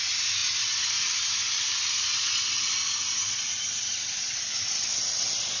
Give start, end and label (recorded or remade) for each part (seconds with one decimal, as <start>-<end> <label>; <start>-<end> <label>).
0.0-5.6 recorded